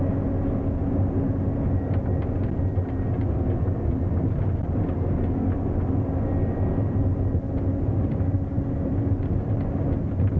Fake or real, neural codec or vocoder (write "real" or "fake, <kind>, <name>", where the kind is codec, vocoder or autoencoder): real